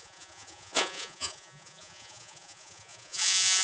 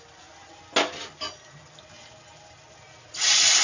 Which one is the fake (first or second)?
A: first